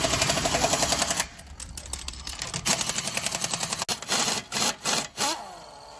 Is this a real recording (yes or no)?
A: yes